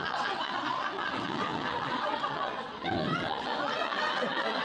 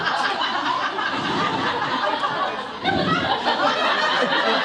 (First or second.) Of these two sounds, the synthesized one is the first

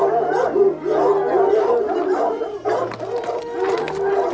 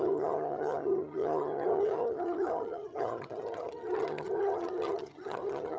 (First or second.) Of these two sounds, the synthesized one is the second